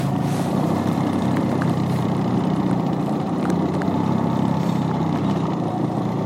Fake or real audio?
fake